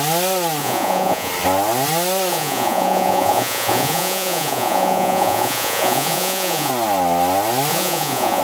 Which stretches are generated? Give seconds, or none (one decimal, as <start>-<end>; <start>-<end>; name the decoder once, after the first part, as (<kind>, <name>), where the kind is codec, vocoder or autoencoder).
0.6-1.3 (vocoder, Vocos); 2.3-6.7; 7.7-8.4